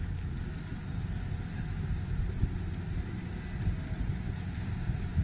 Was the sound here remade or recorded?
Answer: recorded